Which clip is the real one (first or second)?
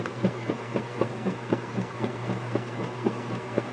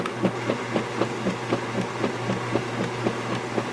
second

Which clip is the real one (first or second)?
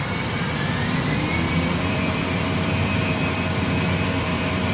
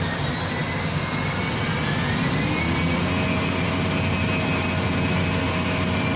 second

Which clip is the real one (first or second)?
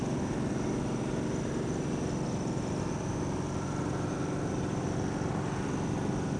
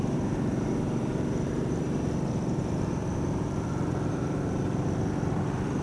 first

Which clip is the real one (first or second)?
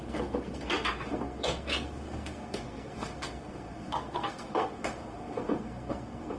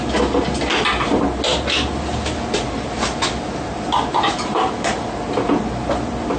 second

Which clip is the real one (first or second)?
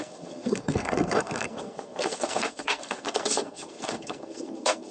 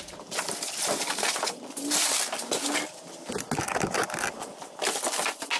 second